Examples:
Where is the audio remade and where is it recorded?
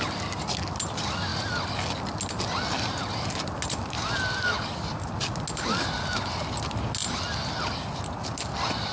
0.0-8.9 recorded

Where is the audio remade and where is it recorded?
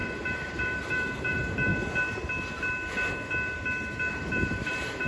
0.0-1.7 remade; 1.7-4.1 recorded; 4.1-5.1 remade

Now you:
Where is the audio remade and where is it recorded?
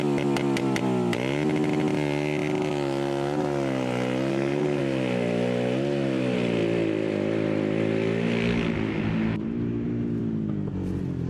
0.0-4.3 recorded; 4.3-4.8 remade; 4.8-11.3 recorded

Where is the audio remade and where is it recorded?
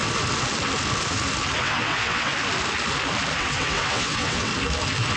0.0-1.6 recorded; 1.6-2.3 remade; 2.3-3.4 recorded; 3.4-4.5 remade; 4.5-5.2 recorded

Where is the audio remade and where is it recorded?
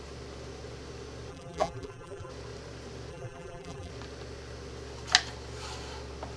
0.0-1.3 recorded; 1.3-2.3 remade; 2.3-3.1 recorded; 3.1-3.9 remade; 3.9-6.4 recorded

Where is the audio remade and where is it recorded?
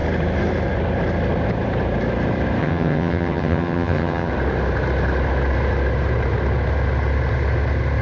0.0-2.6 recorded; 2.6-4.3 remade; 4.3-8.0 recorded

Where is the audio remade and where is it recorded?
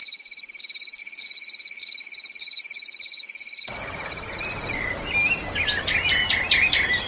0.0-1.0 recorded; 1.0-5.1 remade; 5.1-7.1 recorded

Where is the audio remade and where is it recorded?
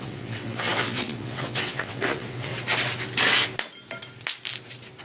0.0-2.5 remade; 2.5-5.0 recorded